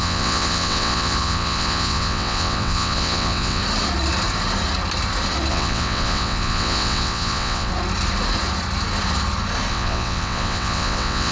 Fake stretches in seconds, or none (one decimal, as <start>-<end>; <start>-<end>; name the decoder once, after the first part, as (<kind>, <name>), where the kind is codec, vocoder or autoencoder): 0.0-3.6 (vocoder, WaveNeXt); 5.5-7.7; 9.7-11.3